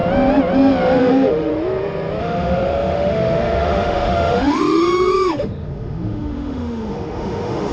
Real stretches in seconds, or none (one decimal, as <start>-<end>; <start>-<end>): 0.0-1.0; 1.5-2.2

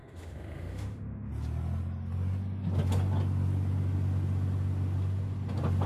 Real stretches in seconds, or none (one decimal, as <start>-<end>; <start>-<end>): 1.3-5.9

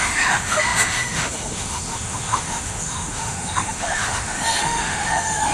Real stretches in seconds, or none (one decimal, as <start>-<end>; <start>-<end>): none

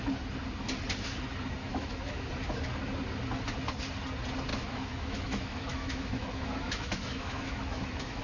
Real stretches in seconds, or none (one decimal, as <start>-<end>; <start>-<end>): 0.0-1.6; 2.3-4.5

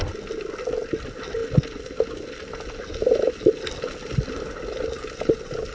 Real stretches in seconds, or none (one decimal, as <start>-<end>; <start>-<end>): 0.0-5.7

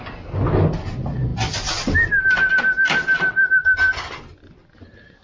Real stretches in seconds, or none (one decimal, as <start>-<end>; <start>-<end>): 0.0-5.2